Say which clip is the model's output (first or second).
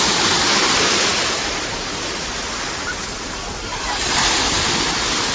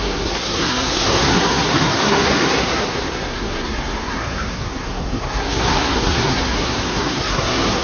second